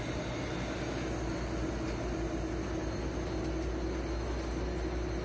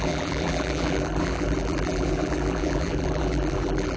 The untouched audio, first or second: first